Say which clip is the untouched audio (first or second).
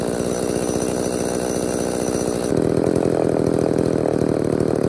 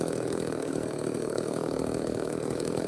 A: first